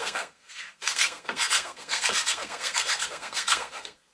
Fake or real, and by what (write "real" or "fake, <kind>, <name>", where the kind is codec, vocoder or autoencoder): fake, codec, SNAC